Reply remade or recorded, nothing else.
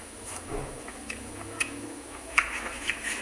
remade